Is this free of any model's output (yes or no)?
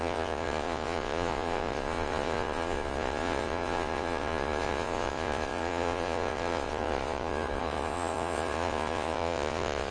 no